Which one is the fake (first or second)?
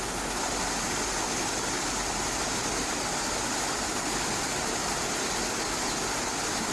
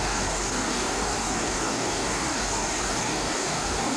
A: second